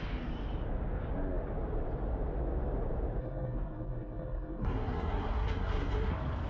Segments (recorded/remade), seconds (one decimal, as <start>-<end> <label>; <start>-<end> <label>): 0.0-3.2 recorded; 3.2-6.1 remade; 6.1-6.5 recorded